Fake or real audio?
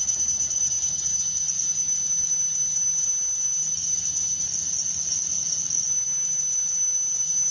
real